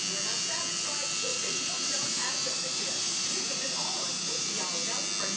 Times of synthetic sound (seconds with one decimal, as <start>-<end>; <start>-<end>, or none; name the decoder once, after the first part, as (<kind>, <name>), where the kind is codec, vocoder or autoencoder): 1.3-4.5 (vocoder, Vocos)

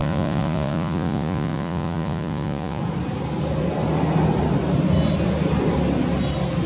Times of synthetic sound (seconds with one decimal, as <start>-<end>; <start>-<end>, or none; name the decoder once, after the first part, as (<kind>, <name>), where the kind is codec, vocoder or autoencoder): 0.0-2.8 (vocoder, Vocos)

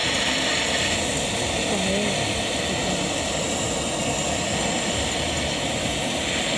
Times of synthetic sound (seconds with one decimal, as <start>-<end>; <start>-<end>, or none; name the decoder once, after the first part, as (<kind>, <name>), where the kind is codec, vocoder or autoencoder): none

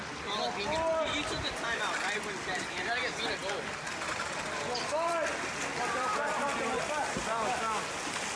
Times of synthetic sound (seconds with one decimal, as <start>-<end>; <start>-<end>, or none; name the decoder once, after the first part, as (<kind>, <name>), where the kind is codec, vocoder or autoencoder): none

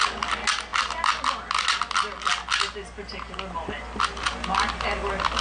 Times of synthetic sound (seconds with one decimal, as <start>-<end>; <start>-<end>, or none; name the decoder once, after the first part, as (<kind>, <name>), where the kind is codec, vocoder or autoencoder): none

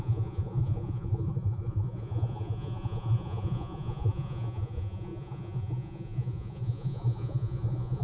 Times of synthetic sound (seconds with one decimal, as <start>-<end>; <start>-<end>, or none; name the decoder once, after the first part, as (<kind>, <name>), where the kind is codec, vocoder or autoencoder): 0.0-8.0 (vocoder, Vocos)

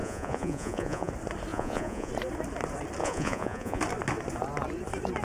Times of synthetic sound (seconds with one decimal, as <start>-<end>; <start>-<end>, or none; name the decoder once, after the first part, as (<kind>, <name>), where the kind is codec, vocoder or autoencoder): 0.0-1.1 (vocoder, Vocos); 1.5-2.1; 3.0-3.8